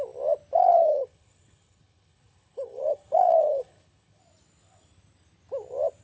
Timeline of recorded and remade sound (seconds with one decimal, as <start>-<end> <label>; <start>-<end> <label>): 0.0-0.6 recorded; 0.6-4.2 remade; 4.2-6.0 recorded